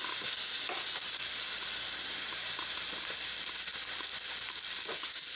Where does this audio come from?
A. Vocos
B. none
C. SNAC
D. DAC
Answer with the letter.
B